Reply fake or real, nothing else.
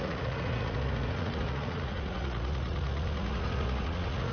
fake